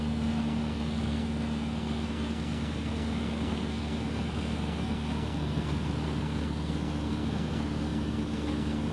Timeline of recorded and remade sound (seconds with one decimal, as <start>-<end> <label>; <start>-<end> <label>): 0.0-8.9 remade